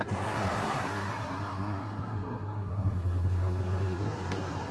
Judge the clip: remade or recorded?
remade